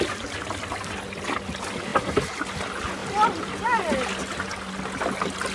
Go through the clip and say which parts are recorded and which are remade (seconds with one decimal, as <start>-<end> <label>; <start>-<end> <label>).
0.0-5.5 recorded